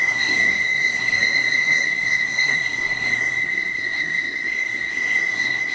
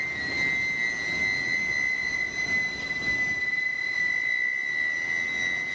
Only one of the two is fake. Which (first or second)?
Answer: first